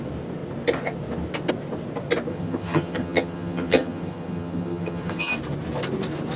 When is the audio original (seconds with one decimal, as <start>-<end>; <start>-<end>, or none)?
0.0-2.3; 5.3-6.4